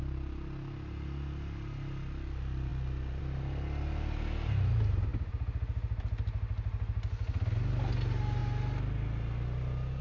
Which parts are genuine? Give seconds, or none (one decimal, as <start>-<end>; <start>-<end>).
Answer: 0.0-10.0